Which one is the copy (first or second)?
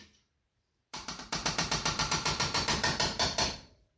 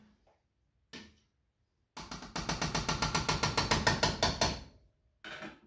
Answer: first